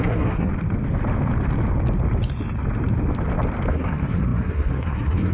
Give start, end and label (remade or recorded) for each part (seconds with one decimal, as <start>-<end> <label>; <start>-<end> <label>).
0.0-0.5 remade; 0.5-3.7 recorded; 3.7-5.3 remade